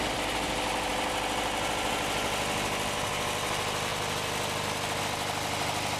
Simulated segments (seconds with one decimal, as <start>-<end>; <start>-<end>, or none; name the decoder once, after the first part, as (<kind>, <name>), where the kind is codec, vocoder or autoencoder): none